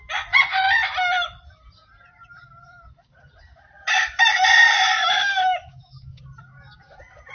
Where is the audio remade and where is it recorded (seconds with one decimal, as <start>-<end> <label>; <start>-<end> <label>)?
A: 0.0-5.0 recorded; 5.0-6.2 remade; 6.2-7.3 recorded